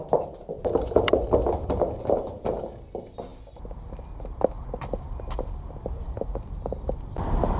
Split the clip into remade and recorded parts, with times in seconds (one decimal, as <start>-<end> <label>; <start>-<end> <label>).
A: 0.0-7.6 remade